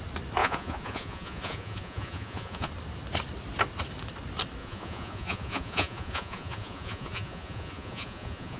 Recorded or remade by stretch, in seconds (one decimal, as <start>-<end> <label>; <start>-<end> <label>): 0.0-0.4 recorded; 0.4-2.7 remade; 2.7-4.6 recorded; 4.6-8.6 remade